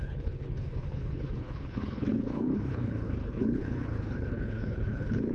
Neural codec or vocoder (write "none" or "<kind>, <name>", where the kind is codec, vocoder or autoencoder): codec, HILCodec